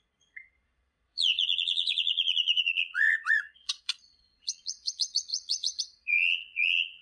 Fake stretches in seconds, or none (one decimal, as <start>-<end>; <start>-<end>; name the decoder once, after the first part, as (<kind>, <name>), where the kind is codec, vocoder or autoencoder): 0.0-7.0 (vocoder, Vocos)

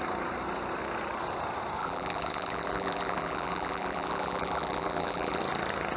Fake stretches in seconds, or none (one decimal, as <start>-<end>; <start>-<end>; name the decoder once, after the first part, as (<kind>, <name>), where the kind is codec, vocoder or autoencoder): 1.8-5.4 (vocoder, BigVGAN v2)

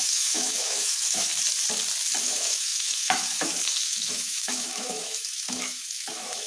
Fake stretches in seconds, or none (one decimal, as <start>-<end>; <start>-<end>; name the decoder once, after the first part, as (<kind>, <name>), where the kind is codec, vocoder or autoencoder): 0.0-1.3 (autoencoder, DAC-VAE); 2.2-6.5